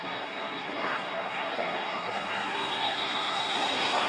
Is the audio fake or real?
fake